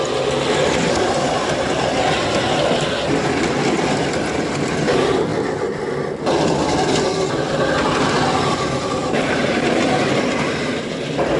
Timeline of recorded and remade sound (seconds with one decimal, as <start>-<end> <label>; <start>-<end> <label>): 0.0-11.4 recorded